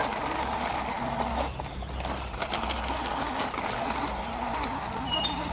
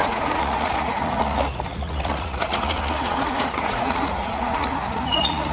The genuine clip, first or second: first